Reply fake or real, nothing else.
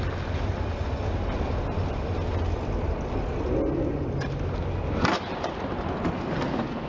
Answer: real